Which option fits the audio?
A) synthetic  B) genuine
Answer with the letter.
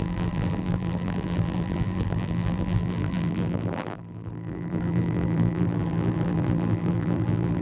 A